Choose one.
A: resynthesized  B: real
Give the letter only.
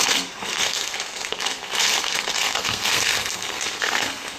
A